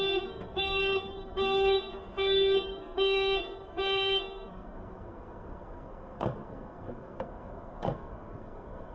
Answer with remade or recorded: remade